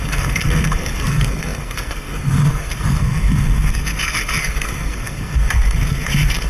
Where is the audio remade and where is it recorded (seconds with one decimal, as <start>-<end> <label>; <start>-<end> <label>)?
0.0-6.5 remade